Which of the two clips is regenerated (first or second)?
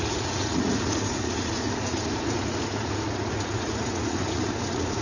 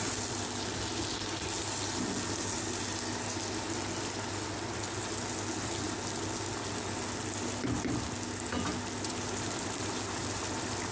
first